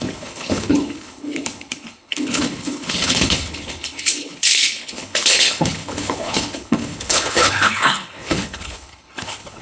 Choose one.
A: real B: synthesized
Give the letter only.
B